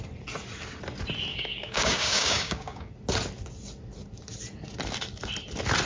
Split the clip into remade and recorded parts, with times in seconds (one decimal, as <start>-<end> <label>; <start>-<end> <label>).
0.0-1.3 recorded; 1.3-2.9 remade; 2.9-5.9 recorded

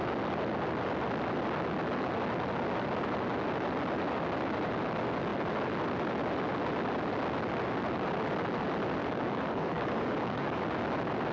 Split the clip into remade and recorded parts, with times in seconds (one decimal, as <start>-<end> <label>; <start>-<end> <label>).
0.0-9.0 recorded; 9.0-10.6 remade; 10.6-11.3 recorded